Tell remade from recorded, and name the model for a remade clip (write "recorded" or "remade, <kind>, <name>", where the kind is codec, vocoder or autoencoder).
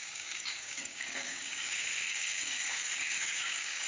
remade, codec, DAC